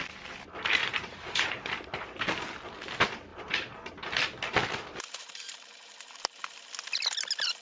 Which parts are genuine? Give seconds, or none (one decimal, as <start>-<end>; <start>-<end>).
0.0-0.8; 1.7-3.3; 3.9-4.6; 6.1-7.6